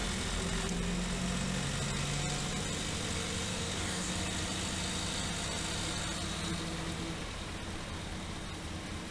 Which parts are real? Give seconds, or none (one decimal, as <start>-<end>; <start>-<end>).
0.0-3.5; 4.1-9.1

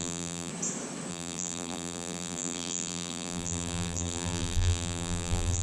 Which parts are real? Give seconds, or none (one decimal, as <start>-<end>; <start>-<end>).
0.5-1.1